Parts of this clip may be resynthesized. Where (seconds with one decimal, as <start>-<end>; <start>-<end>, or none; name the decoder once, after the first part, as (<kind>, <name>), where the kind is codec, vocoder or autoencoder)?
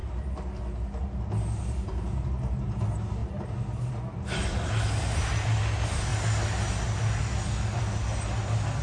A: none